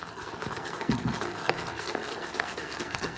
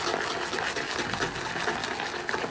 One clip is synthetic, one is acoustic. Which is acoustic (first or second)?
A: second